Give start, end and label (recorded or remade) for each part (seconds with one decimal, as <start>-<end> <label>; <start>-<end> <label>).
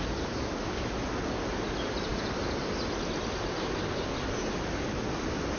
0.0-5.6 recorded